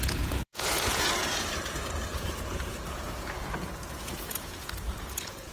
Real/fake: fake